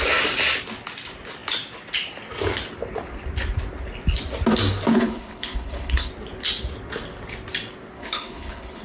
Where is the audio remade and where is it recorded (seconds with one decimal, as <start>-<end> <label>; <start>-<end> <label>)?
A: 0.0-4.9 recorded; 4.9-6.1 remade; 6.1-8.0 recorded; 8.0-8.8 remade